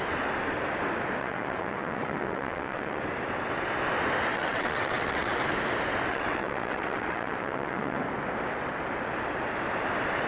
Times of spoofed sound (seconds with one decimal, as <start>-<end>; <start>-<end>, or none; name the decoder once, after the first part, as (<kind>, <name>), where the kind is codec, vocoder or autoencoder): 1.2-3.0 (vocoder, WaveNeXt); 4.3-5.4; 6.1-8.0